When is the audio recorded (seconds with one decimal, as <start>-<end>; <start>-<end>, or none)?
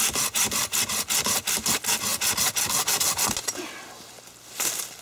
0.0-5.0